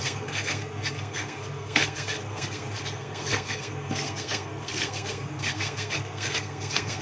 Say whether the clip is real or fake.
fake